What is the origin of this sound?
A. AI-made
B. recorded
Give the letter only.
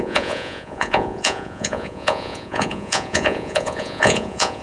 A